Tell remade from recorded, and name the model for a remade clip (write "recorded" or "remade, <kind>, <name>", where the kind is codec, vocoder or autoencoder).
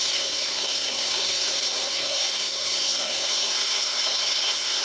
remade, codec, SNAC